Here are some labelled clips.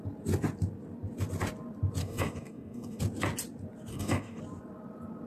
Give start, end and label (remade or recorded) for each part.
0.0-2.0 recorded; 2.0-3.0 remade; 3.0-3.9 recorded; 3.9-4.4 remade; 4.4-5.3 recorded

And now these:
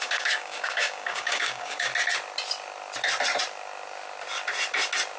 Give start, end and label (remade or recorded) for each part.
0.0-1.9 remade; 1.9-5.2 recorded

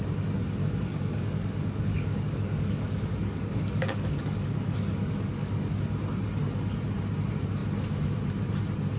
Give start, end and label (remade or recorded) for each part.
0.0-0.6 recorded; 0.6-5.8 remade; 5.8-9.0 recorded

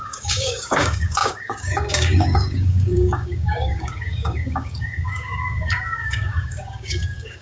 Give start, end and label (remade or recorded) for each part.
0.0-7.4 remade